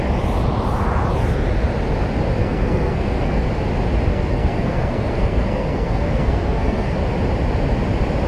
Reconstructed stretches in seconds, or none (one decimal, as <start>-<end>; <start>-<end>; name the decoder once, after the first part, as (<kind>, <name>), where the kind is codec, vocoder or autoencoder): 2.4-3.5 (codec, SNAC); 4.1-7.0